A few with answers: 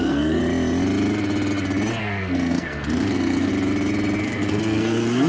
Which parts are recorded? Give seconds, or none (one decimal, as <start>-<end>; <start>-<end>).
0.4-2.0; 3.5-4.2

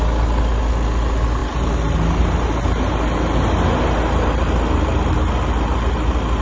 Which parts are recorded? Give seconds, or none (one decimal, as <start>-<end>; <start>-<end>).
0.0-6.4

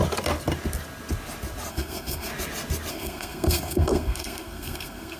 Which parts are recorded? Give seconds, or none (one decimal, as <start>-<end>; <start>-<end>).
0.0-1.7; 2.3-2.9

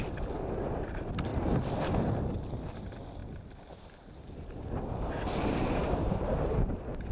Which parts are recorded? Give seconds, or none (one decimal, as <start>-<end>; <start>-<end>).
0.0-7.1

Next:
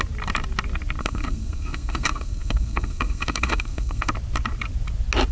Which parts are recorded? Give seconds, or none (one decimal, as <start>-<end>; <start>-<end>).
0.0-1.0; 4.1-5.3

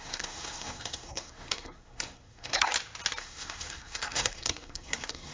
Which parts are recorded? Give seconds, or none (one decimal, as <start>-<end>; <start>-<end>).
2.7-3.2

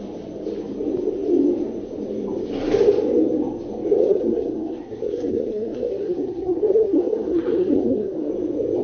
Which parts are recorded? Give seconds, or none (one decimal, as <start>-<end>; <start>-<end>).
0.0-4.0; 8.3-8.8